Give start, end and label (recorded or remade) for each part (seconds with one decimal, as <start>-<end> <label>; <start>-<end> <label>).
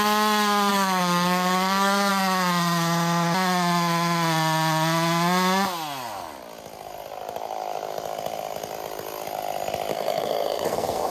0.0-0.7 recorded; 0.7-2.1 remade; 2.1-9.9 recorded; 9.9-11.1 remade